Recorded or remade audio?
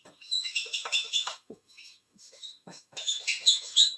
remade